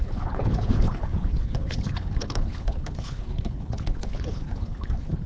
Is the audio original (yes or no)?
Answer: no